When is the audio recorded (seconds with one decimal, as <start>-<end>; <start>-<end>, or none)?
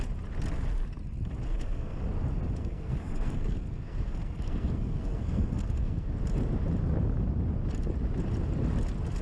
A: 0.0-1.5; 2.0-2.6; 6.1-9.2